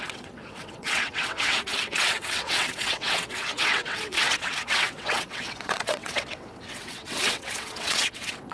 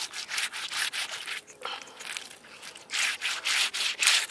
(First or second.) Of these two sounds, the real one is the second